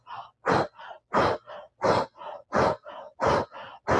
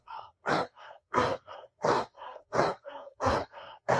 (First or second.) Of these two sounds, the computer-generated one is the second